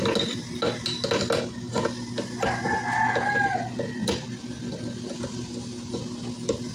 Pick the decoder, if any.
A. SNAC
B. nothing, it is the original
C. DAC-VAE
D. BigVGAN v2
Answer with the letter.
B